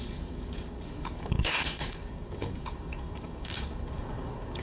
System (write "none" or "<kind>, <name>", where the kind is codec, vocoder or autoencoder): codec, DAC